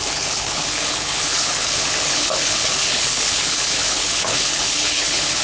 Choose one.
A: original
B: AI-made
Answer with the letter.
B